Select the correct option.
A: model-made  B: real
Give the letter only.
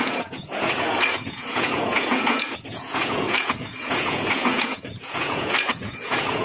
A